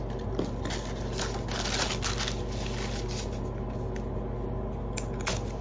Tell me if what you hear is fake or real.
real